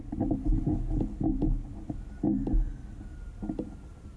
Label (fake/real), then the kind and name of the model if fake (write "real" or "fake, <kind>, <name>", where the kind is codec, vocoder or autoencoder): real